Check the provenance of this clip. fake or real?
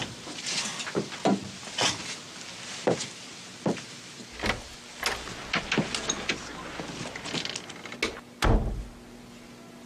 real